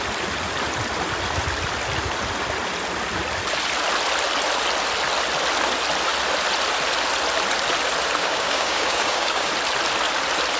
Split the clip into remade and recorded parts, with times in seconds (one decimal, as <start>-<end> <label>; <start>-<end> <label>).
0.0-8.2 recorded; 8.2-9.5 remade; 9.5-10.6 recorded